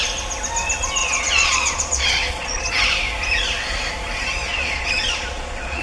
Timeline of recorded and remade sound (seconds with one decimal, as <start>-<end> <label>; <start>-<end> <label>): 0.0-1.0 recorded; 1.0-2.7 remade; 2.7-4.5 recorded; 4.5-5.8 remade